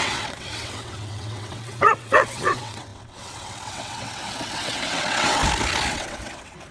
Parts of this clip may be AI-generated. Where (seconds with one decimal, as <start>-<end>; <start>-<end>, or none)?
0.0-5.4; 5.9-6.7